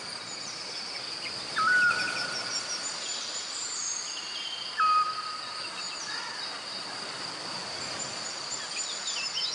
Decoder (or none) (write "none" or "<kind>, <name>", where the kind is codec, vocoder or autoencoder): none